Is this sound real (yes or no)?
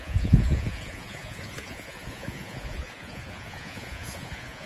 no